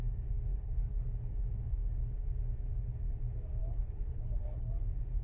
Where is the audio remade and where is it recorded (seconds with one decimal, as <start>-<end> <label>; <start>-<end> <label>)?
0.0-0.5 recorded; 0.5-1.0 remade; 1.0-3.6 recorded; 3.6-4.7 remade; 4.7-5.2 recorded